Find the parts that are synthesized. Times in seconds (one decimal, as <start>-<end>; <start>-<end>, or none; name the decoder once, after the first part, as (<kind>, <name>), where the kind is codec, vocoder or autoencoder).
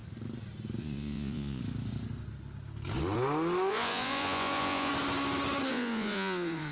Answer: 0.8-1.6 (vocoder, Vocos); 3.7-4.9; 5.7-6.7